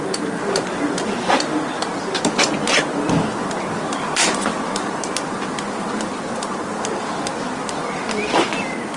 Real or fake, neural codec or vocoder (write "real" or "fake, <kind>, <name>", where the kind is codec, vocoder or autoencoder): real